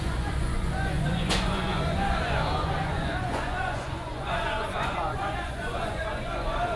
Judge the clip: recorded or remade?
remade